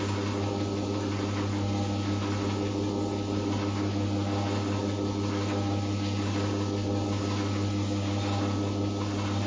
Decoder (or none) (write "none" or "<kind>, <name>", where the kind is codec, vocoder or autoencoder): none